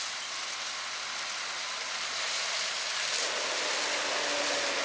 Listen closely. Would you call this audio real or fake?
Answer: real